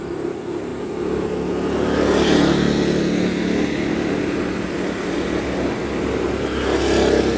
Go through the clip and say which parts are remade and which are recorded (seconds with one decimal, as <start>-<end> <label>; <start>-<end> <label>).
0.0-7.4 recorded